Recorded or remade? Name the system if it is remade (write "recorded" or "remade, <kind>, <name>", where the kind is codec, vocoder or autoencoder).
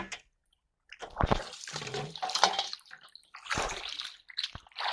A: recorded